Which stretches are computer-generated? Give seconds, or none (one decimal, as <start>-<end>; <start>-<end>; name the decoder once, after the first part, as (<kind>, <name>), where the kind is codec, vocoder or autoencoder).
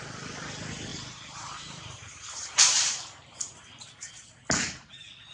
0.9-4.1 (vocoder, BigVGAN v2)